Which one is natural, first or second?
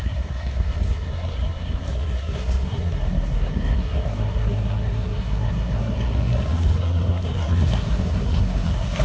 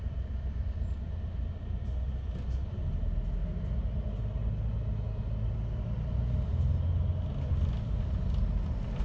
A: second